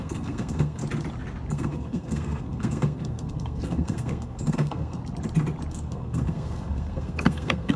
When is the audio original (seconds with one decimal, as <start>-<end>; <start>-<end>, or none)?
0.8-1.5; 5.0-5.7